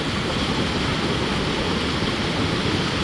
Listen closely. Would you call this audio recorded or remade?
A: recorded